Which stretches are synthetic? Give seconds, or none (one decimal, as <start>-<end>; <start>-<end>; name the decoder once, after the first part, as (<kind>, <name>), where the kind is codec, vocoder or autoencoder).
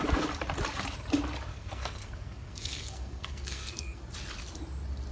1.5-4.0 (codec, SNAC)